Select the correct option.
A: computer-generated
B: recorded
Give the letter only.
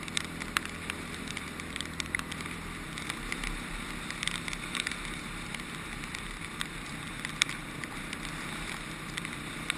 A